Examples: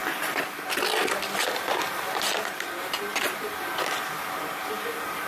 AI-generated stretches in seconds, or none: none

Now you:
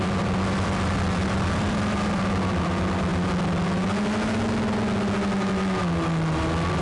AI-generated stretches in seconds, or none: 0.0-3.1 (vocoder, BigVGAN v2)

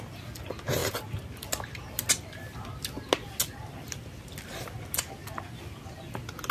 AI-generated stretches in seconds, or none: none

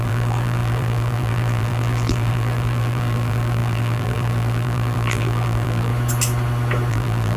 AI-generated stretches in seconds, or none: 0.0-5.9 (vocoder, BigVGAN v2); 6.9-7.4